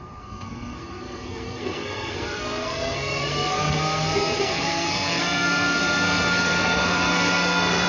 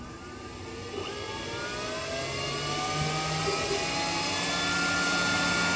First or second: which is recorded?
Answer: second